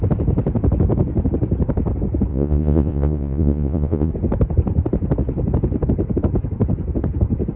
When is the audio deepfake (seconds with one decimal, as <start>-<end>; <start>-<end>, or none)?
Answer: 2.3-4.1